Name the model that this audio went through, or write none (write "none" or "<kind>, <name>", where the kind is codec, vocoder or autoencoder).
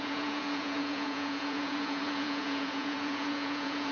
vocoder, Vocos